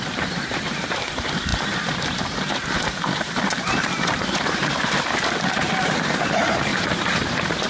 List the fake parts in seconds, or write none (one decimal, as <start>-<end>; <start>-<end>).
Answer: 0.0-7.7